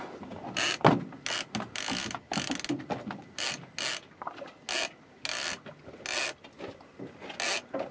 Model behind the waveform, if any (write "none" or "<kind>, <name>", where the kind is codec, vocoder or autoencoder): none